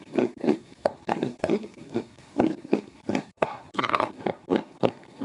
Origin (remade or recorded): remade